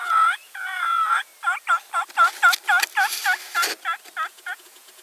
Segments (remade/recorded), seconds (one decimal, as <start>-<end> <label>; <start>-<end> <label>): 0.0-1.3 remade; 1.3-4.3 recorded; 4.3-5.0 remade

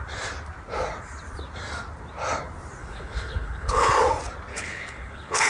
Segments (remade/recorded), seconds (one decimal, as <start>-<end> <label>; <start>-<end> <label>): 0.0-2.8 recorded; 2.8-3.9 remade; 3.9-4.5 recorded; 4.5-5.5 remade

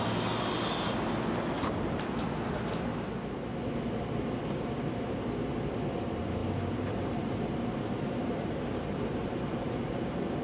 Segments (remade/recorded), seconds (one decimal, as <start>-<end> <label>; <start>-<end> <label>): 0.0-6.4 recorded; 6.4-9.9 remade; 9.9-10.4 recorded

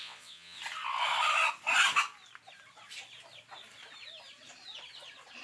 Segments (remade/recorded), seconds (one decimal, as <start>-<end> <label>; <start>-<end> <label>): 0.0-0.6 remade; 0.6-5.4 recorded

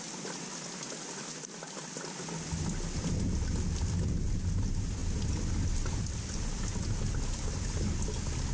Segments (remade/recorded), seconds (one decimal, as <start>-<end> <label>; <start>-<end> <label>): 0.0-8.5 recorded

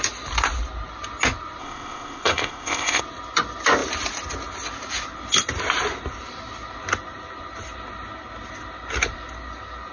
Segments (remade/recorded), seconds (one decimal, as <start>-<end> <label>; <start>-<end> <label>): 0.0-1.6 recorded; 1.6-3.0 remade; 3.0-9.9 recorded